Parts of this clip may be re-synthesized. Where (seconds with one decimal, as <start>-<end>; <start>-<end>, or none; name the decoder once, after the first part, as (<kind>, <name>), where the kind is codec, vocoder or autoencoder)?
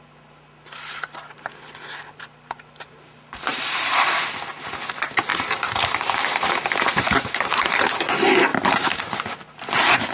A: 3.5-4.1 (vocoder, BigVGAN v2); 5.3-7.8; 8.5-9.0